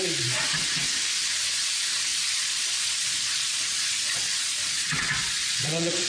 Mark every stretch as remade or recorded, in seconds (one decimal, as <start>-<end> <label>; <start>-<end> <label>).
0.0-2.1 recorded; 2.1-6.1 remade